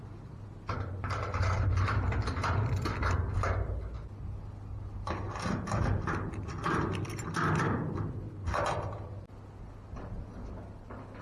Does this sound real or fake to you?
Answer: real